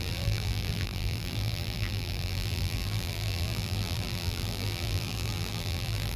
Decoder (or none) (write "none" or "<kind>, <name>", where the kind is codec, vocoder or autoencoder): vocoder, BigVGAN v2